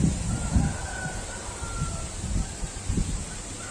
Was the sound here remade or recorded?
recorded